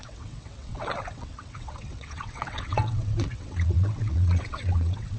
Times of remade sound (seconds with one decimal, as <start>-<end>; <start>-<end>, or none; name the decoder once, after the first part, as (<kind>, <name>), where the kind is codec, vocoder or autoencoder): 0.0-5.2 (vocoder, WaveNeXt)